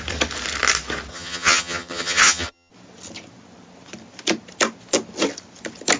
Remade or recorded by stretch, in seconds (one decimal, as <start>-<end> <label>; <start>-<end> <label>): 0.0-1.1 recorded; 1.1-2.7 remade; 2.7-6.0 recorded